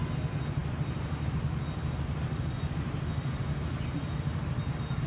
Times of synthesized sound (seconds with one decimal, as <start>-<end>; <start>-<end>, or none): none